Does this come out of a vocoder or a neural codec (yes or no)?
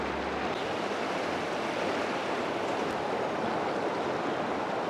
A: no